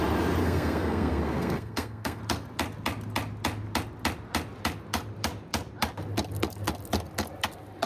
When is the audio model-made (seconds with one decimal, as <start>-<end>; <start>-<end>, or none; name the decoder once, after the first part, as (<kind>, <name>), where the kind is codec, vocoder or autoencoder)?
0.4-2.2 (codec, SNAC)

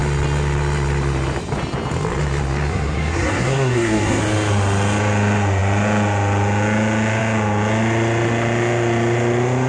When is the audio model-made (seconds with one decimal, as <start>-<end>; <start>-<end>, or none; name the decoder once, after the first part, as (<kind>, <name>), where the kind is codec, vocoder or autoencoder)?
2.7-4.2 (codec, SNAC)

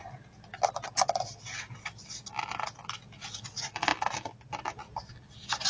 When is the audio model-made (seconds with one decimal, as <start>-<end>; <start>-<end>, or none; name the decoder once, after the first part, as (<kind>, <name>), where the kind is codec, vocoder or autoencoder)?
none

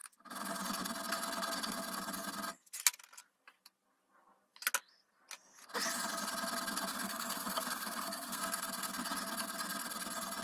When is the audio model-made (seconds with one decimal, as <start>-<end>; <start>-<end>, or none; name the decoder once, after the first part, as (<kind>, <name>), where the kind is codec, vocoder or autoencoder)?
6.9-8.4 (codec, SNAC)

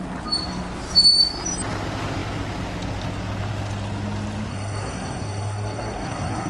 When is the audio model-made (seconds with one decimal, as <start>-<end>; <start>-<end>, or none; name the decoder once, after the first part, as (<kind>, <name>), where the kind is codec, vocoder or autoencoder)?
4.5-6.5 (codec, SNAC)

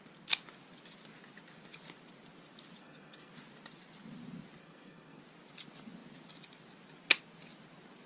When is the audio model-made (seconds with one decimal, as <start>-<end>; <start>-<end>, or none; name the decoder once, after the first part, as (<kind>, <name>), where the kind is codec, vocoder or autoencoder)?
2.8-3.3 (codec, SNAC); 4.6-5.2

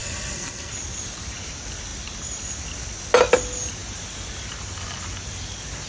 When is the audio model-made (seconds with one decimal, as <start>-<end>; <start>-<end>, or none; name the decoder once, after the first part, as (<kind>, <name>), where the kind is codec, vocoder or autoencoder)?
0.0-0.7 (codec, SNAC)